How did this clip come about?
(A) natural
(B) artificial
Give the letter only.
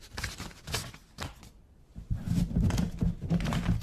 A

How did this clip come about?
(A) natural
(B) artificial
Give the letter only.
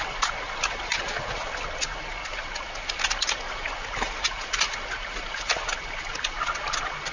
A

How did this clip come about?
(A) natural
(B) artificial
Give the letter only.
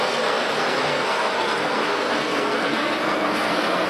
B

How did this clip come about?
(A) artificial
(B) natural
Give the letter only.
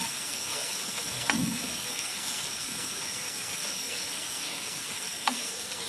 A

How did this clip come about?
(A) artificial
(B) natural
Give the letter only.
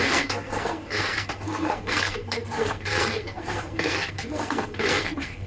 A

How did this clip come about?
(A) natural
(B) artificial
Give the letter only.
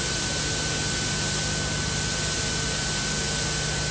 A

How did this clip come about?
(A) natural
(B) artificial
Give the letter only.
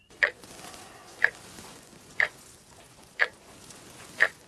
B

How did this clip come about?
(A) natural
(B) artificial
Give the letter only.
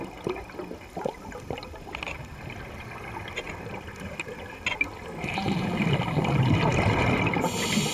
A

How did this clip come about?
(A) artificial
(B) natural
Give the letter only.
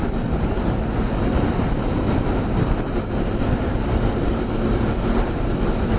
A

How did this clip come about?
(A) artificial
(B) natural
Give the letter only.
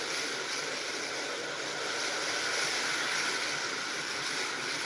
B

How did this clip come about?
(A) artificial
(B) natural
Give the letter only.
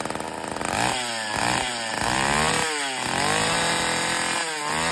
B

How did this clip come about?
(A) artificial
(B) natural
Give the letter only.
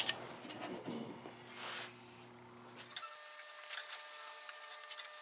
B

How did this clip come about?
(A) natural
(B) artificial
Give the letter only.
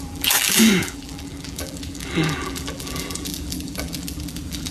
B